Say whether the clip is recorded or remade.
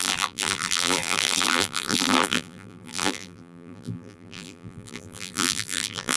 remade